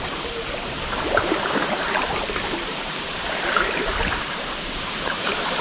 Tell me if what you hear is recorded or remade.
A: remade